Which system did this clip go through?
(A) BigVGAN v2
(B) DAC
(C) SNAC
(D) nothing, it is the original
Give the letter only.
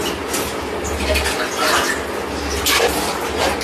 D